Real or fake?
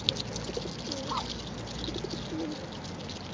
real